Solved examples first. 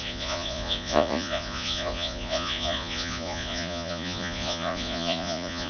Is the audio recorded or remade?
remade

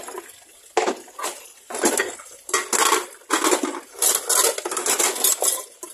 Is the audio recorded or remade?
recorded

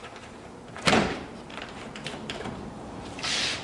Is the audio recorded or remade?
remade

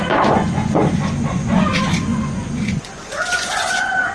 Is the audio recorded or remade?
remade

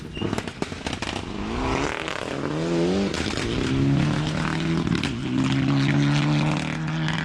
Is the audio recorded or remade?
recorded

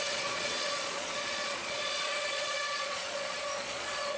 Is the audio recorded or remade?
remade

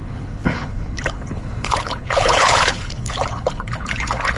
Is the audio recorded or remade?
remade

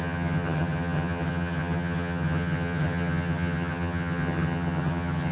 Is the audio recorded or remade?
remade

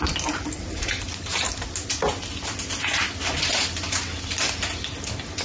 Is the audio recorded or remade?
recorded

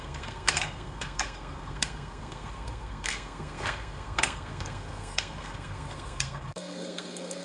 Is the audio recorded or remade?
remade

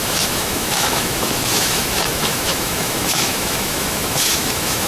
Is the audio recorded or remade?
remade